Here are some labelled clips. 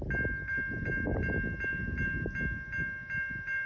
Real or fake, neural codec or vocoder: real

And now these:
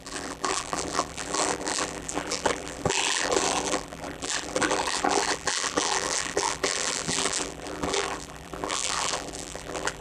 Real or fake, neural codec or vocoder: fake, vocoder, BigVGAN v2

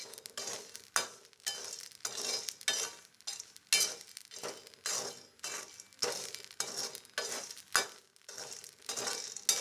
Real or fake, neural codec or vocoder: real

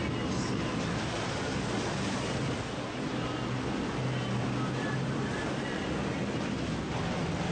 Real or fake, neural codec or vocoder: real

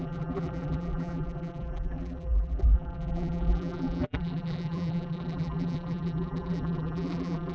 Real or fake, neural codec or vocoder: fake, vocoder, BigVGAN v2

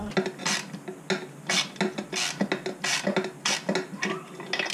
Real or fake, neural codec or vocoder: real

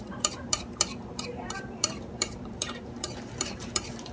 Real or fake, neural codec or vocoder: fake, vocoder, BigVGAN v2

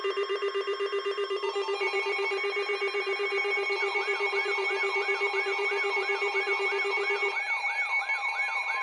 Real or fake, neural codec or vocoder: fake, vocoder, BigVGAN v2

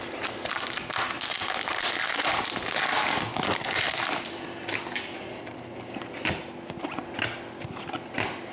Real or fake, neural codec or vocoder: real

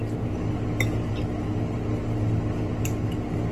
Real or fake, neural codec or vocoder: real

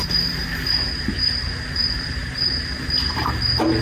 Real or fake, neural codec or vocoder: fake, vocoder, BigVGAN v2